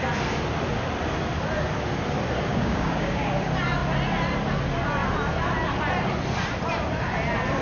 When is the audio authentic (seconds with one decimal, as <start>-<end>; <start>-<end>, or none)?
0.0-2.5; 3.3-7.6